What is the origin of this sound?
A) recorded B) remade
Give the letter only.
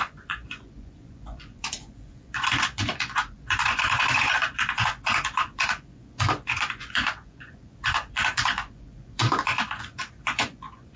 B